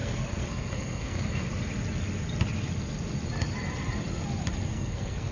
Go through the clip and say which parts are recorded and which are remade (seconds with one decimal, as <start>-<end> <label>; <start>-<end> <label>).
0.0-1.5 remade; 1.5-4.7 recorded; 4.7-5.3 remade